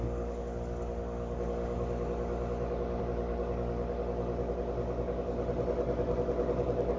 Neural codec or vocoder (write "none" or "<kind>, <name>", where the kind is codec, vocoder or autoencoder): none